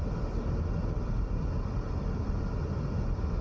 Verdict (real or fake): real